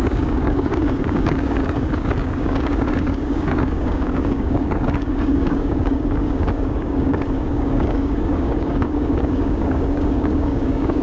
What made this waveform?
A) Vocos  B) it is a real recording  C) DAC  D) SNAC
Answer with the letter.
C